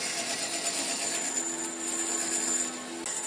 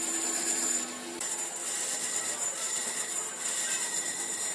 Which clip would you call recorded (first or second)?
first